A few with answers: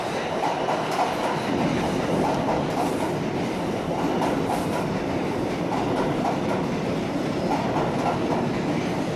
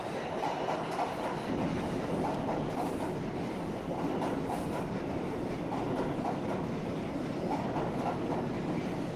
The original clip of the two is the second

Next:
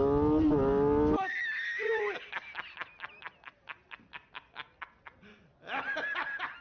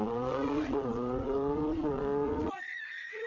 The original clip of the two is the first